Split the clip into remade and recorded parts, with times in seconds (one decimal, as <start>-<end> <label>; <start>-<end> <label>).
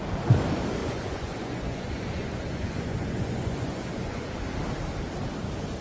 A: 0.0-0.8 recorded; 0.8-4.3 remade; 4.3-5.8 recorded